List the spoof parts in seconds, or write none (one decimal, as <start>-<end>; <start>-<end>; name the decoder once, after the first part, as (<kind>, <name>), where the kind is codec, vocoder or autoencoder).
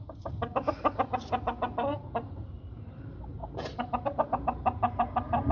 0.0-0.4 (vocoder, BigVGAN v2); 1.9-3.4